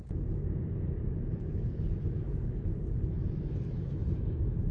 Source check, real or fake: fake